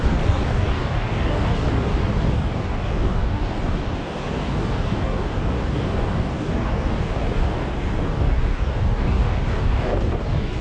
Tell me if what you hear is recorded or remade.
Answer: remade